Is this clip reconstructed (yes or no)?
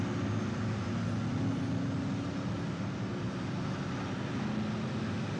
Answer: no